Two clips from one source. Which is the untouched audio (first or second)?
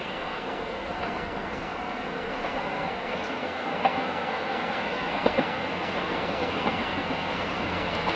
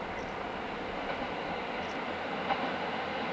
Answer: second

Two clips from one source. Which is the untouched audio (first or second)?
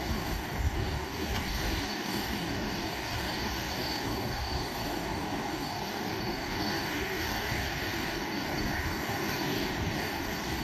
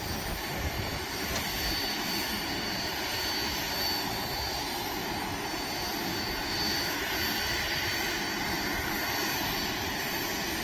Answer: second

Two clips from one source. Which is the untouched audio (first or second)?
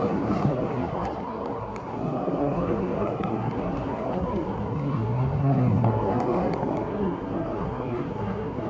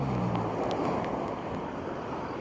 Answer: second